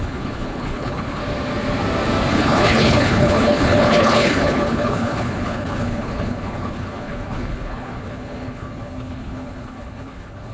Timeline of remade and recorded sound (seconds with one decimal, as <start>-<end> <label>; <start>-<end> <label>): 0.0-1.2 remade; 1.2-2.3 recorded; 2.3-10.5 remade